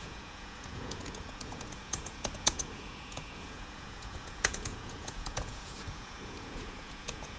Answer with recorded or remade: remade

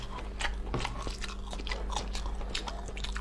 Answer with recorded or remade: recorded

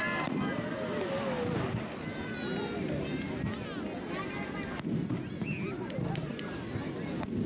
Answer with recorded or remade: recorded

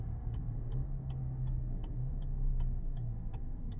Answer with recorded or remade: remade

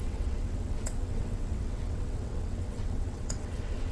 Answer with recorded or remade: remade